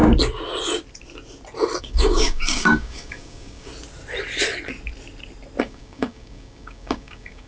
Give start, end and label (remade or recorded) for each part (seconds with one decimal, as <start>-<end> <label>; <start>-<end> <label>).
0.0-1.8 recorded; 1.8-3.7 remade; 3.7-5.6 recorded; 5.6-7.5 remade